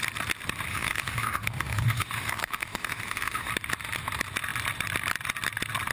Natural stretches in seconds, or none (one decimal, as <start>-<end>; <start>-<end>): 0.0-0.7; 3.5-5.9